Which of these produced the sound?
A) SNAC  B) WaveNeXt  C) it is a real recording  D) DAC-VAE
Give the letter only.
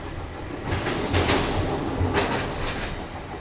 C